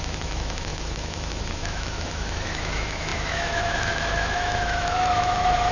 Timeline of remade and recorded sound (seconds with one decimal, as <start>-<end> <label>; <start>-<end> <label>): 0.0-5.7 remade